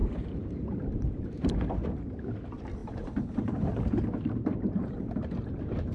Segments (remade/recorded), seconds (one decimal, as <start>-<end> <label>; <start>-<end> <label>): 0.0-1.5 remade; 1.5-2.8 recorded; 2.8-5.5 remade; 5.5-5.9 recorded